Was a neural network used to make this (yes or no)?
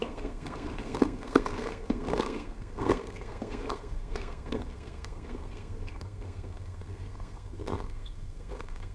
yes